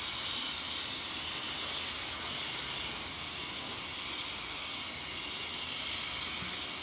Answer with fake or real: real